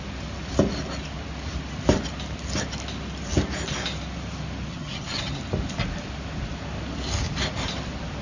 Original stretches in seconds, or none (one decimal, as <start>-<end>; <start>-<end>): 0.0-4.7; 5.4-8.2